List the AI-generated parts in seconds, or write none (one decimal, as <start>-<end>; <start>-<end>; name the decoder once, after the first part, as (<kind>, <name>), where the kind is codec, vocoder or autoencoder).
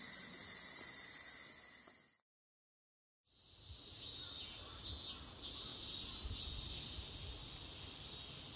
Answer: 2.9-3.7 (vocoder, BigVGAN v2)